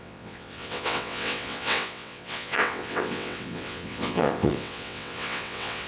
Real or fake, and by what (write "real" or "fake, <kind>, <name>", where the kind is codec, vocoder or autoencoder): fake, vocoder, WaveNeXt